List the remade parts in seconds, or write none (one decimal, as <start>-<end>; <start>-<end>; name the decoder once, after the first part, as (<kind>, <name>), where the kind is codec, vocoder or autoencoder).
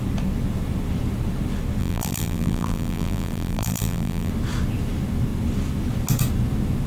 1.8-4.3 (vocoder, BigVGAN v2)